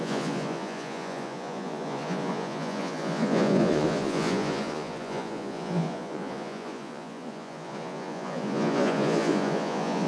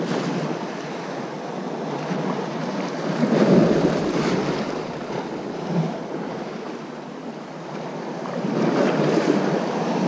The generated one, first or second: first